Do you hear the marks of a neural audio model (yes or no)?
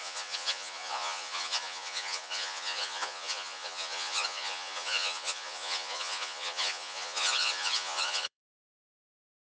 yes